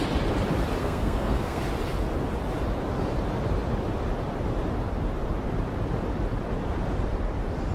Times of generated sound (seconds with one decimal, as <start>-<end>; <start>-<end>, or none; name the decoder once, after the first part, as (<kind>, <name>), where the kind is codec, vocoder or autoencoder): 0.8-1.6 (codec, SNAC)